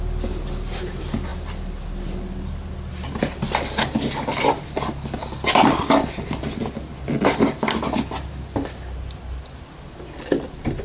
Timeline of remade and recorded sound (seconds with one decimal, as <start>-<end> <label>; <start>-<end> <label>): 0.0-10.8 recorded